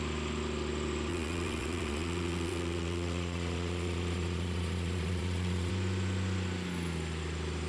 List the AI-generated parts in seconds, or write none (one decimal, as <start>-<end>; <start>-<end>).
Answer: 1.1-5.7